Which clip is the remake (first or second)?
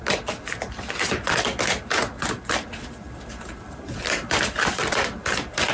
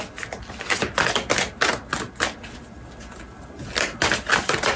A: first